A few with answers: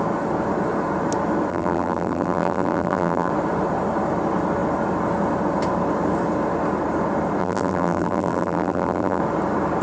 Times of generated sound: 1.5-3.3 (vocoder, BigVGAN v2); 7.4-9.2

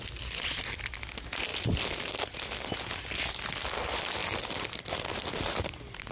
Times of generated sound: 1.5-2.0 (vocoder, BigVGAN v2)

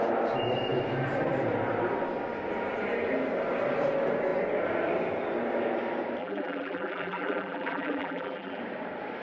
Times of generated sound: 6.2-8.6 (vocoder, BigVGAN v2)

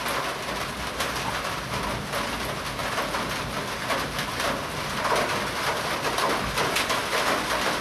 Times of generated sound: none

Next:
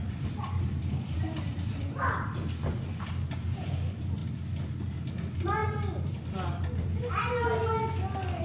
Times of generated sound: 0.0-2.3 (vocoder, BigVGAN v2)

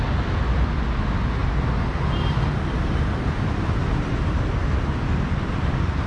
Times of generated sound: none

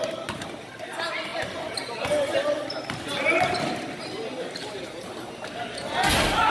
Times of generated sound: 1.3-1.9 (vocoder, BigVGAN v2); 4.6-5.6